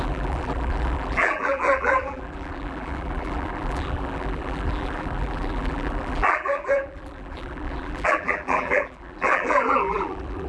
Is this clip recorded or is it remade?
remade